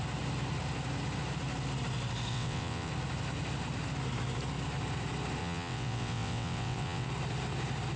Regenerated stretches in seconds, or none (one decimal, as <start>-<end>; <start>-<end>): 2.3-2.9; 5.4-7.1

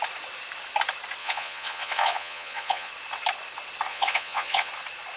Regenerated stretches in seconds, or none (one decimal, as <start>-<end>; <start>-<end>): 1.2-2.9; 3.9-4.7